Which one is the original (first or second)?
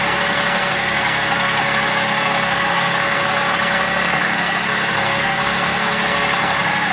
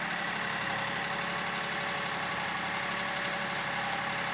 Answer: second